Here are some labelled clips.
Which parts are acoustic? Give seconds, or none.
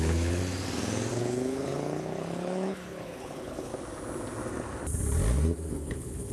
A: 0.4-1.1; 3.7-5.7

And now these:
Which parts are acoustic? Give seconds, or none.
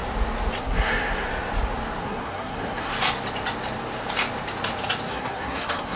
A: 0.0-0.6; 1.3-2.0; 2.9-5.1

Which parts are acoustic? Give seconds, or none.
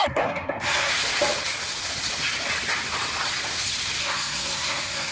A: 0.9-4.0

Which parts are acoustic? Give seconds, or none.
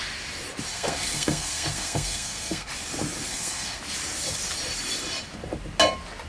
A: 0.0-0.7; 2.7-3.3; 3.8-6.3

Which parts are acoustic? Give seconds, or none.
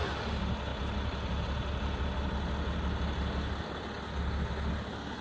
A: 0.0-5.2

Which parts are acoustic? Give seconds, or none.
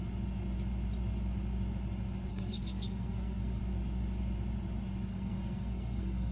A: 0.0-2.3; 3.6-5.1